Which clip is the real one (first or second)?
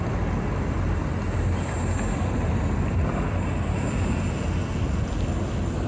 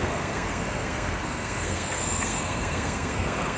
first